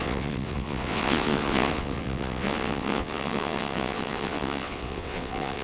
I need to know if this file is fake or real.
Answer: fake